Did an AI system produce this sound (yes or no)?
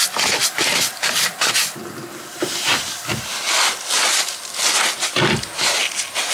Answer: no